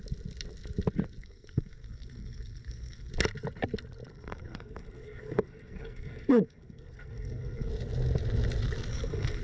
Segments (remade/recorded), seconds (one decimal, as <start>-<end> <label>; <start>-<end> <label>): 0.0-1.2 recorded; 1.2-3.1 remade; 3.1-4.1 recorded; 4.1-7.7 remade; 7.7-8.9 recorded; 8.9-9.4 remade